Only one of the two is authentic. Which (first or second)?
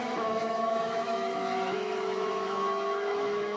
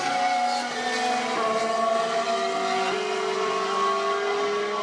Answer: second